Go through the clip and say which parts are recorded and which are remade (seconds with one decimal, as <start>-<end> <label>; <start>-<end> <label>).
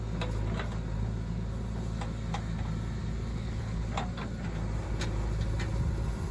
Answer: 0.0-3.3 recorded; 3.3-3.9 remade; 3.9-6.3 recorded